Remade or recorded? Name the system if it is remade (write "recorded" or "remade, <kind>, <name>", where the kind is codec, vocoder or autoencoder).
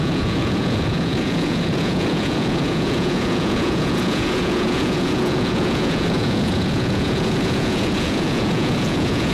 remade, vocoder, Vocos